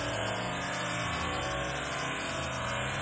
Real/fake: real